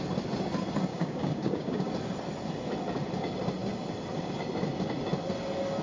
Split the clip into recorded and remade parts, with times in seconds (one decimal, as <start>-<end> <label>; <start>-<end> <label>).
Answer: 0.0-0.9 recorded; 0.9-1.9 remade; 1.9-5.8 recorded